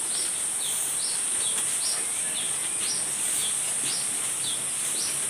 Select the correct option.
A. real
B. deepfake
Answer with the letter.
A